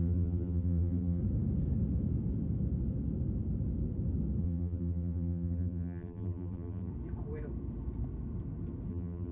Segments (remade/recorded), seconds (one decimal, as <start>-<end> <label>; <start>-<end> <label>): 0.0-1.2 remade; 1.2-4.4 recorded; 4.4-6.9 remade; 6.9-8.9 recorded; 8.9-9.3 remade